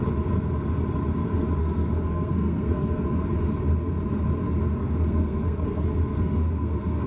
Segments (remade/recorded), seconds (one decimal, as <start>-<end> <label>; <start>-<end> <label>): 0.0-1.6 recorded; 1.6-3.0 remade; 3.0-4.8 recorded; 4.8-7.1 remade